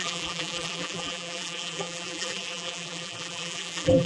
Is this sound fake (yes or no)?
yes